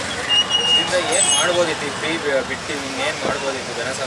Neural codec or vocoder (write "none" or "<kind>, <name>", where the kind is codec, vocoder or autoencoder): none